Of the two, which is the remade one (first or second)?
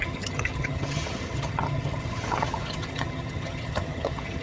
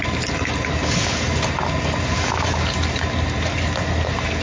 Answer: first